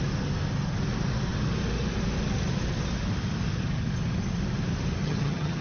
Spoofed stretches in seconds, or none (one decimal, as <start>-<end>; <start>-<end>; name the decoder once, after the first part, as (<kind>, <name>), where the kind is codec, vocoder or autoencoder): 5.0-5.6 (vocoder, HiFi-GAN)

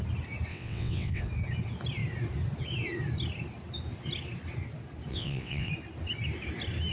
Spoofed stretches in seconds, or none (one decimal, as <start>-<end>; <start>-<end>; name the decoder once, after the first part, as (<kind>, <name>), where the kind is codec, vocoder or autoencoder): 0.5-1.2 (vocoder, WaveNeXt); 5.1-5.7

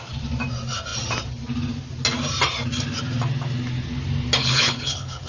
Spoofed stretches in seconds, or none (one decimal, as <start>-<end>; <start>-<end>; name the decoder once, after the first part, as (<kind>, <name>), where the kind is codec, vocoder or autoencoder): 4.4-5.3 (codec, HILCodec)

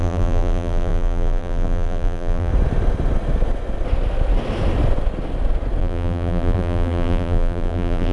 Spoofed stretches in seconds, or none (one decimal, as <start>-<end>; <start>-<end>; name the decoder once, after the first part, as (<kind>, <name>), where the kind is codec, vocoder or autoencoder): 0.0-2.5 (vocoder, BigVGAN v2); 5.8-8.1